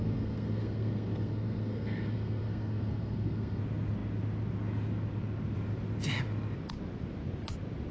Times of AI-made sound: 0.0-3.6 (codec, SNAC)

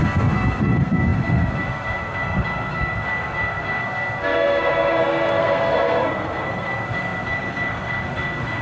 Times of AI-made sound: 0.0-8.6 (codec, SNAC)

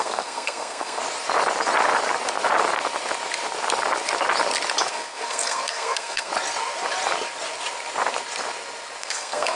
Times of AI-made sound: 0.0-1.0 (codec, SNAC); 4.9-6.3; 9.0-9.6

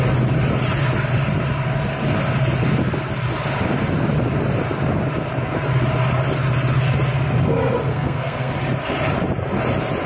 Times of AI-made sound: 7.9-8.5 (codec, SNAC)

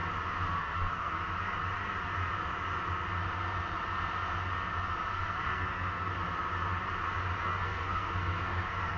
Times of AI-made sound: 0.6-1.2 (codec, SNAC); 5.1-6.1; 7.4-9.0

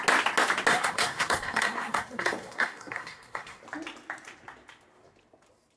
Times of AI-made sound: 0.7-3.6 (codec, SNAC)

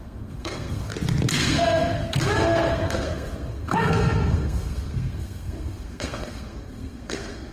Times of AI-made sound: 0.0-0.9 (codec, SNAC); 1.4-7.5